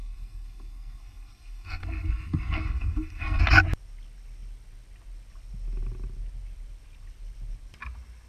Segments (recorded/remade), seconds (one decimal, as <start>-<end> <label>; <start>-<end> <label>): 0.0-3.4 remade; 3.4-8.3 recorded